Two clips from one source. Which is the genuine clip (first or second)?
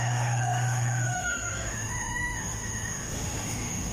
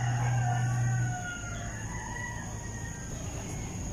second